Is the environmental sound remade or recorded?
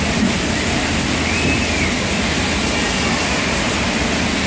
recorded